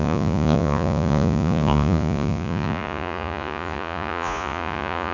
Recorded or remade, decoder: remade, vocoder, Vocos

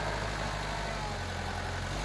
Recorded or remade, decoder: recorded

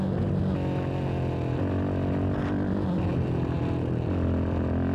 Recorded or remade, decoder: recorded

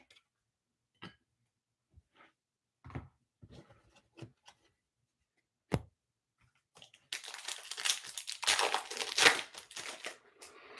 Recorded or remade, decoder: recorded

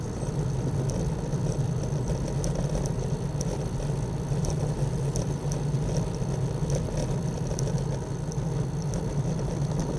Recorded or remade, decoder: recorded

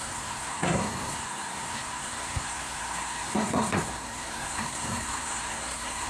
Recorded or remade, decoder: remade, codec, SNAC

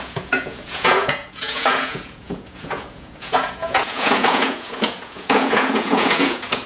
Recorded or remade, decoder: remade, vocoder, Vocos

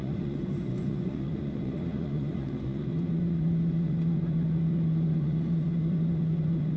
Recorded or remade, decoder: remade, vocoder, Vocos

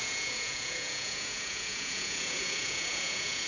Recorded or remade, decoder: remade, vocoder, Vocos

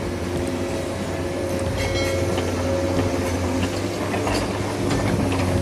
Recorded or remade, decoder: recorded